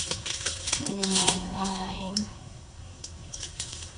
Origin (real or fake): fake